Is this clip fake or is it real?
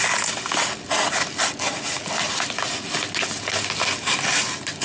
real